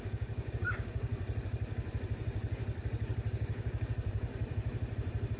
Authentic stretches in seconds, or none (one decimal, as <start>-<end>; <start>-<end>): 1.1-3.3; 4.3-5.4

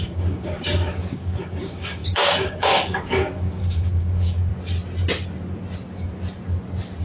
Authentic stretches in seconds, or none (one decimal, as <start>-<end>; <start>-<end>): 4.5-7.0

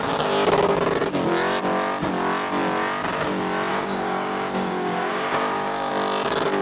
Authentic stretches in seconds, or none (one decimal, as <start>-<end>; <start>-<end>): 0.0-3.7; 5.9-6.6

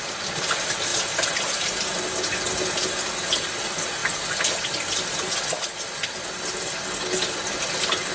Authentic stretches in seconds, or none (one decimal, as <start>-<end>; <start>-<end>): 0.0-8.1